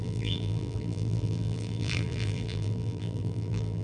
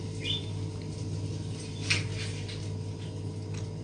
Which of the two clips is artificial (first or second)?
first